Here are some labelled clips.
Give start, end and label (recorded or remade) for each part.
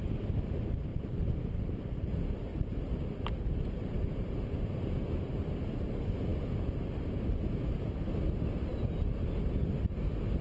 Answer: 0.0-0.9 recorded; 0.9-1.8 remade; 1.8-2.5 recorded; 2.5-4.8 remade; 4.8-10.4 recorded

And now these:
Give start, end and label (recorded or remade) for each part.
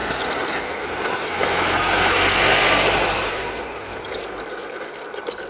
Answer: 0.0-5.5 recorded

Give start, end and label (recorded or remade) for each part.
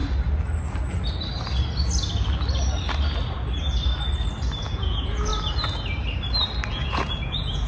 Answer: 0.0-4.6 recorded; 4.6-5.3 remade; 5.3-6.7 recorded; 6.7-7.7 remade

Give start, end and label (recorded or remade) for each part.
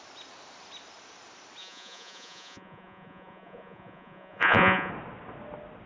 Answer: 0.0-1.6 recorded; 1.6-4.9 remade; 4.9-5.9 recorded